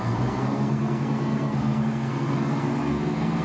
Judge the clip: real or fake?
fake